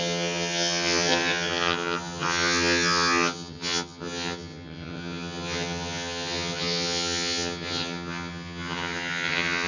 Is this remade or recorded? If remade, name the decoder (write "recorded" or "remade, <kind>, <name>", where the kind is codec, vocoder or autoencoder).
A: remade, vocoder, HiFi-GAN